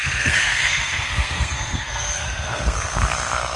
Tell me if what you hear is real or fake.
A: fake